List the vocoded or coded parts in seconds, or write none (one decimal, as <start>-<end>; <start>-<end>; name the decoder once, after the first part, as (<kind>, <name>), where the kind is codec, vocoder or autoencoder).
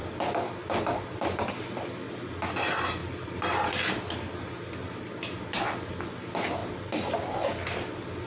none